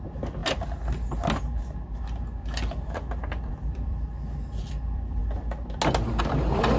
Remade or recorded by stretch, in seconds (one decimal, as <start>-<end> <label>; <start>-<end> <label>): 0.0-0.4 remade; 0.4-3.5 recorded; 3.5-5.2 remade; 5.2-6.2 recorded; 6.2-6.8 remade